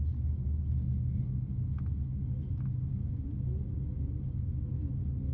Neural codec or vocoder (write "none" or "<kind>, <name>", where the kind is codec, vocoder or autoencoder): none